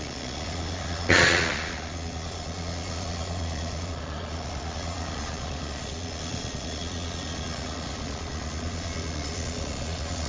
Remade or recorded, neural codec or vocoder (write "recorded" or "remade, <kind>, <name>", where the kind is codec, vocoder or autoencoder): remade, vocoder, Vocos